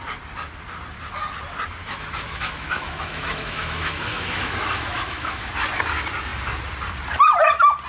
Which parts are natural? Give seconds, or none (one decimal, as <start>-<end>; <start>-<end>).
0.0-1.8; 5.5-7.9